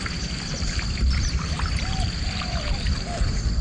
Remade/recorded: recorded